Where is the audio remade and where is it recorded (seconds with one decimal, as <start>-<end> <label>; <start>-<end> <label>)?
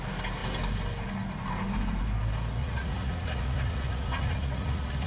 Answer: 0.0-2.6 recorded; 2.6-5.1 remade